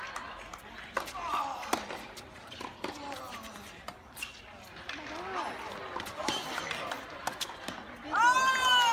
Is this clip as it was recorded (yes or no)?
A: yes